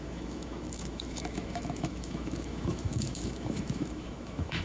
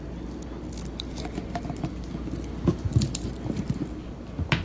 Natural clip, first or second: second